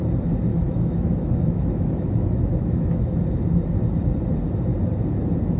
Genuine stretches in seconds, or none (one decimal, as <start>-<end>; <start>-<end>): 0.0-0.5; 3.1-5.6